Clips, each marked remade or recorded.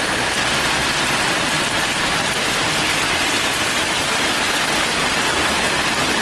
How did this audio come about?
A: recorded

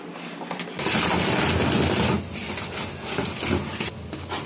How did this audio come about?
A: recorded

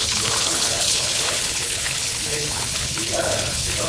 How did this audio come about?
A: remade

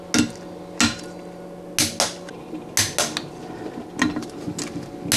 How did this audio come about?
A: recorded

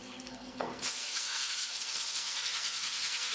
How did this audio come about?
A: remade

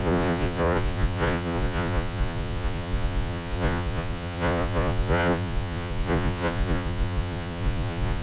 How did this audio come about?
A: remade